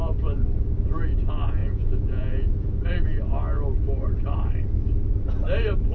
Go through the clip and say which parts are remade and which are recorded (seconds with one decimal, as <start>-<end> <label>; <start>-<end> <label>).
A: 0.0-1.6 recorded; 1.6-2.8 remade; 2.8-5.9 recorded